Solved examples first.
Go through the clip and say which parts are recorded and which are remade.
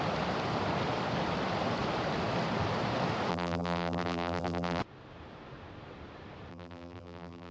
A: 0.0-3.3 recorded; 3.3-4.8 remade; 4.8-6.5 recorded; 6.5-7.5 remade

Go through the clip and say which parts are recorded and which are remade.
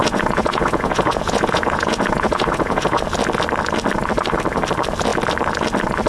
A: 0.0-3.0 remade; 3.0-6.1 recorded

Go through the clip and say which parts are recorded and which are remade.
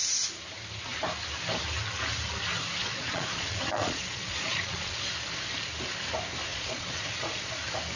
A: 0.0-2.8 recorded; 2.8-5.1 remade; 5.1-6.5 recorded; 6.5-7.6 remade; 7.6-8.0 recorded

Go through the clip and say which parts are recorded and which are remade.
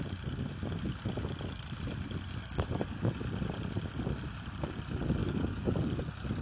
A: 0.0-2.4 recorded; 2.4-3.1 remade; 3.1-5.2 recorded; 5.2-5.8 remade; 5.8-6.4 recorded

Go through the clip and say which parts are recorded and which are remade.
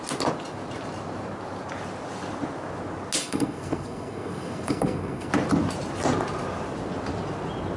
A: 0.0-3.2 recorded; 3.2-5.3 remade; 5.3-7.8 recorded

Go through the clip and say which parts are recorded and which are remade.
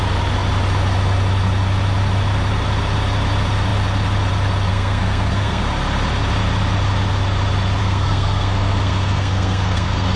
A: 0.0-4.7 recorded; 4.7-5.6 remade; 5.6-7.8 recorded; 7.8-10.2 remade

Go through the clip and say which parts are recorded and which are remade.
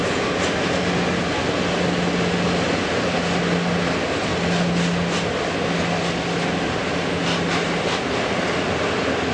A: 0.0-9.3 recorded